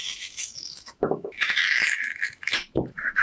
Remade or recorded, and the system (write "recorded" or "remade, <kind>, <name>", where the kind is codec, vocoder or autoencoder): remade, autoencoder, DAC-VAE